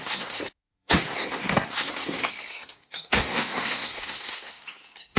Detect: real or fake fake